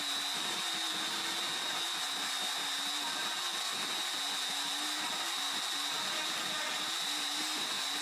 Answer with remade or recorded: recorded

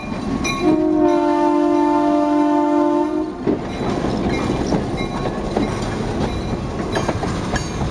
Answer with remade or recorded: recorded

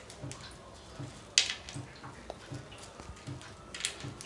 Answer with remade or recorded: recorded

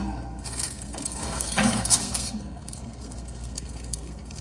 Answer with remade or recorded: remade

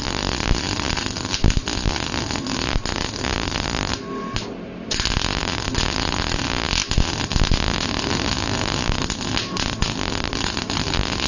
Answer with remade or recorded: recorded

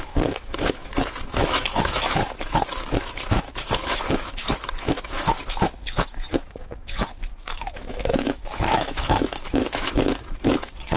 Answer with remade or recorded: remade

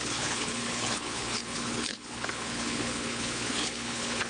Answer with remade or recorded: remade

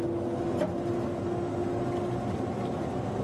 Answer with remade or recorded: recorded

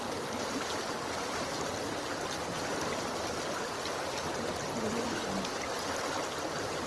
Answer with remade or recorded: recorded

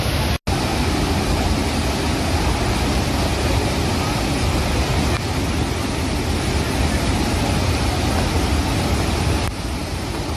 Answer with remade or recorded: recorded